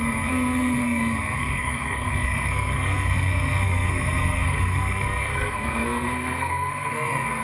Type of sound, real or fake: fake